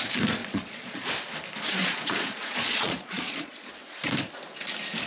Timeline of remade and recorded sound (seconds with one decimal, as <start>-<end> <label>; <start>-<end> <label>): 0.0-0.4 recorded; 0.4-1.1 remade; 1.1-1.8 recorded; 1.8-3.5 remade; 3.5-5.1 recorded